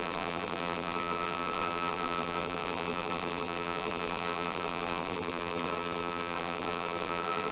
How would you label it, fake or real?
fake